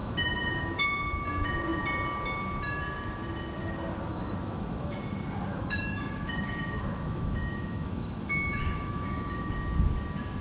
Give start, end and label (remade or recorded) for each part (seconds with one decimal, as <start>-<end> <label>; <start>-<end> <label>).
0.0-0.8 remade; 0.8-4.1 recorded; 4.1-5.0 remade; 5.0-5.5 recorded; 5.5-9.5 remade; 9.5-10.4 recorded